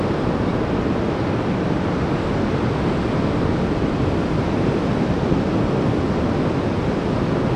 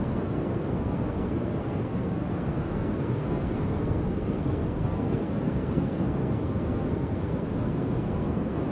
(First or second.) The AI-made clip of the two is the second